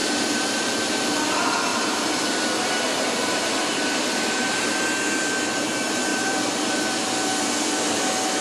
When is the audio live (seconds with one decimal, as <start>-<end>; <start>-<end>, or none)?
0.8-6.1; 6.8-8.4